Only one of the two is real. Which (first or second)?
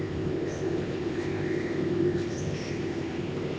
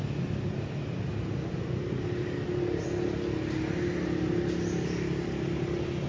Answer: second